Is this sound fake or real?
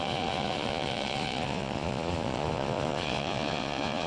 fake